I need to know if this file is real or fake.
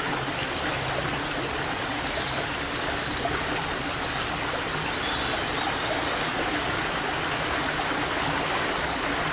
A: real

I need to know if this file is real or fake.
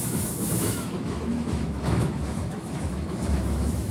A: fake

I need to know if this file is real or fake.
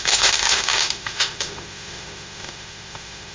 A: fake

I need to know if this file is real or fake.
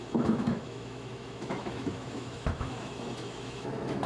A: fake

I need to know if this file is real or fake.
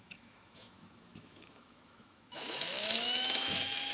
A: fake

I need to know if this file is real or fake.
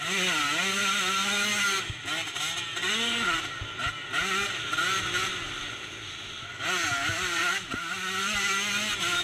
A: real